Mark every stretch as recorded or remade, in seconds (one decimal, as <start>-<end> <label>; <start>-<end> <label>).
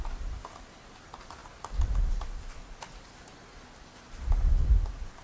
0.0-5.2 recorded